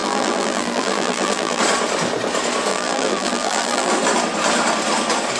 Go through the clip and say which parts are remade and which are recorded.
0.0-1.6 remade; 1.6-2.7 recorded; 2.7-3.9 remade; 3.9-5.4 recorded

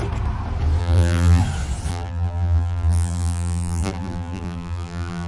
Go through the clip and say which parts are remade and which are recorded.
0.0-0.8 recorded; 0.8-1.4 remade; 1.4-1.9 recorded; 1.9-5.3 remade

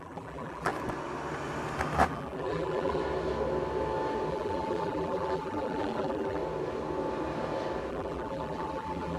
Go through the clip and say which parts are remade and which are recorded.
0.0-0.7 remade; 0.7-2.1 recorded; 2.1-3.0 remade; 3.0-4.3 recorded; 4.3-6.4 remade; 6.4-7.9 recorded; 7.9-9.2 remade

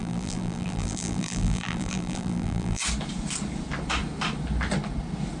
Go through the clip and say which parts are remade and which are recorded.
0.0-2.8 remade; 2.8-5.4 recorded